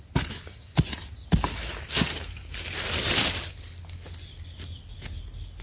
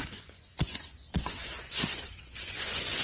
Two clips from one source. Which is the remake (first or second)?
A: second